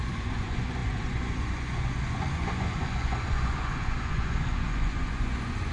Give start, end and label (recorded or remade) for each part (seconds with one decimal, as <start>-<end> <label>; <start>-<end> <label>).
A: 0.0-5.7 remade